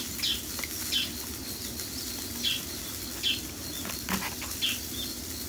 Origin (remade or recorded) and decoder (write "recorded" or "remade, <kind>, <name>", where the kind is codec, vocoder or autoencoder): recorded